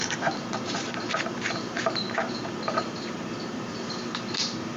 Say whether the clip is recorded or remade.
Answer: remade